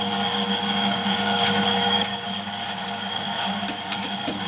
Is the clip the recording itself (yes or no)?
no